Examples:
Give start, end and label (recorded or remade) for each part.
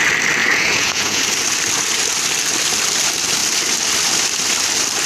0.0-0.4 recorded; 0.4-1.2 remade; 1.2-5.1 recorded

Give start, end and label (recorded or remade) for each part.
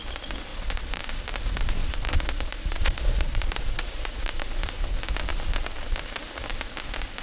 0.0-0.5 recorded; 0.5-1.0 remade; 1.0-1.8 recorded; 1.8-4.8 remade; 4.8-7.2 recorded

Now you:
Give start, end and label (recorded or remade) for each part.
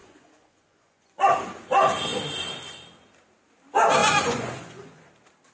0.0-1.3 remade; 1.3-4.0 recorded; 4.0-5.1 remade; 5.1-5.5 recorded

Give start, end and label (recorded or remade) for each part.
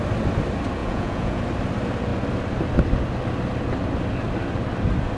0.0-0.8 recorded; 0.8-1.4 remade; 1.4-5.2 recorded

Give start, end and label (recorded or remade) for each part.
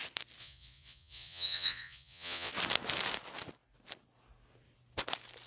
0.0-0.4 recorded; 0.4-2.5 remade; 2.5-5.5 recorded